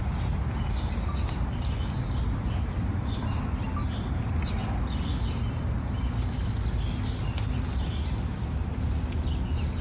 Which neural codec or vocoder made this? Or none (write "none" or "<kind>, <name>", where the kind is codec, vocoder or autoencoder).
none